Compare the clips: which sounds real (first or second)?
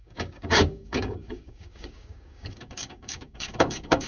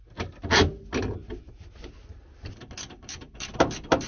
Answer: second